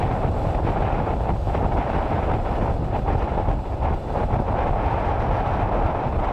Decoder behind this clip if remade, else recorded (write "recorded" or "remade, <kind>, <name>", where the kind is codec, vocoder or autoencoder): recorded